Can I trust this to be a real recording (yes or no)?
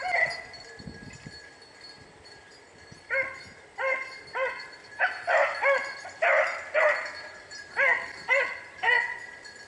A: yes